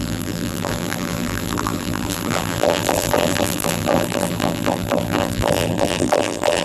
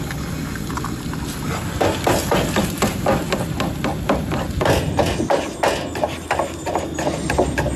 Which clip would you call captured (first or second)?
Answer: second